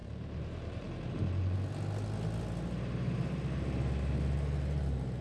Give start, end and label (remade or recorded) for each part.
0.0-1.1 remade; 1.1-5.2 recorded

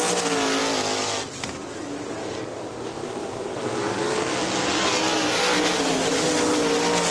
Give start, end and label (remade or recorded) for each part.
0.0-7.1 recorded

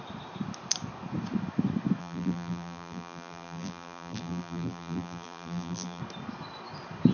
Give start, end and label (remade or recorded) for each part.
0.0-2.0 recorded; 2.0-6.0 remade; 6.0-7.1 recorded

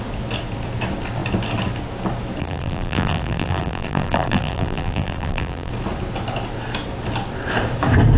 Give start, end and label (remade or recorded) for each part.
0.0-2.4 recorded; 2.4-5.7 remade; 5.7-8.2 recorded

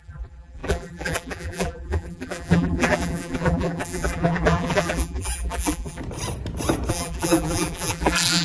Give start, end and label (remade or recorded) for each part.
0.0-6.0 remade; 6.0-6.9 recorded; 6.9-8.4 remade